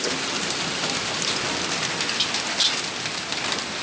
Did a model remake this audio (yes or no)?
no